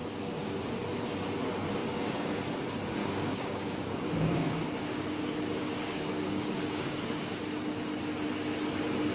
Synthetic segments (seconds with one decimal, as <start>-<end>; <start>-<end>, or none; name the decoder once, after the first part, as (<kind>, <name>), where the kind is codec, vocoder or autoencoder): 0.0-0.6 (codec, DAC); 1.8-2.5; 3.0-7.4

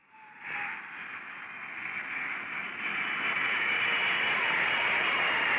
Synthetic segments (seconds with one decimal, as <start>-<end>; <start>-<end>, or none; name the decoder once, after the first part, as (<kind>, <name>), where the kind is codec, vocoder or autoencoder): 0.0-0.9 (vocoder, BigVGAN v2); 4.4-5.6

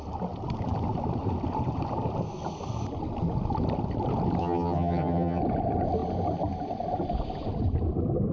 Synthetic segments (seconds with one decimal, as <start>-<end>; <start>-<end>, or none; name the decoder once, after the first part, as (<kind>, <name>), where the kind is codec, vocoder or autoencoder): 4.4-5.4 (vocoder, HiFi-GAN)

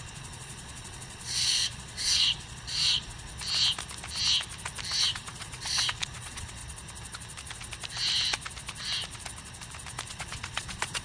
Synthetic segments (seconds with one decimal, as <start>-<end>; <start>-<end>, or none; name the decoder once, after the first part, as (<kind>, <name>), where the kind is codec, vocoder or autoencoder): 0.0-3.3 (vocoder, Vocos); 5.0-6.6; 10.1-11.0

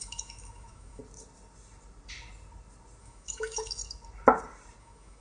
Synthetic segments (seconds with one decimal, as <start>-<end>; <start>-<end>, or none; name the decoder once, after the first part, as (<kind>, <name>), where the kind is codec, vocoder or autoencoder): 0.0-1.0 (autoencoder, DAC-VAE); 3.0-3.8; 4.8-5.2

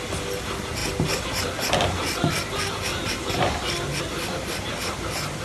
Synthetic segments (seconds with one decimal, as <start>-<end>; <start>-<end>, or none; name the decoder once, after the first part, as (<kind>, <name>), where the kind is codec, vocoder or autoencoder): none

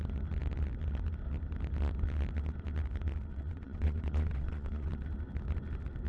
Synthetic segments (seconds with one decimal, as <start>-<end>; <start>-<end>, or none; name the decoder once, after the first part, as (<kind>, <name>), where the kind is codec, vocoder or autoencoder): 3.3-4.9 (vocoder, WaveNeXt)